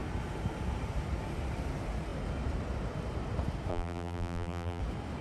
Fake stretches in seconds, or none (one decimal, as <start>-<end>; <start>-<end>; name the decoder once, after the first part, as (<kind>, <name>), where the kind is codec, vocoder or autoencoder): 3.7-4.8 (vocoder, BigVGAN v2)